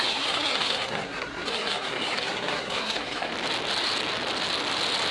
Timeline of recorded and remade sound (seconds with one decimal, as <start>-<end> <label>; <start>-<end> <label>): 0.0-3.3 remade; 3.3-5.1 recorded